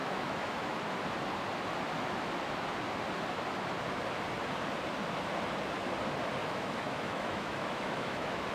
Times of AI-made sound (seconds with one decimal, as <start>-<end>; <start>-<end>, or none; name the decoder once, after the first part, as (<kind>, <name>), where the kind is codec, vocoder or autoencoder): 0.0-0.8 (autoencoder, DAC-VAE); 6.4-8.5